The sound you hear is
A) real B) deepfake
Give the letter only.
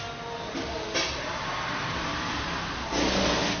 A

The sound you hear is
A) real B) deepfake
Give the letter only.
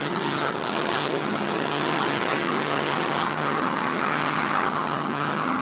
B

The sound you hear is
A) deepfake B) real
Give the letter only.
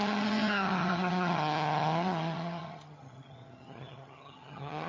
A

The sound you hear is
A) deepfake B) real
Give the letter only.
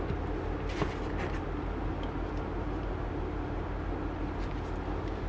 B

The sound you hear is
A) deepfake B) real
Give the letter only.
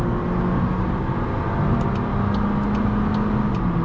B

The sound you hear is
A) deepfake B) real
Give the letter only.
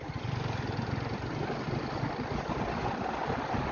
B